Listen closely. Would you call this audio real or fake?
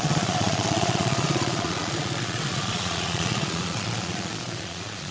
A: fake